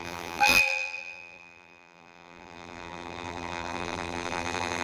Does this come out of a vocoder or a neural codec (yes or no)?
yes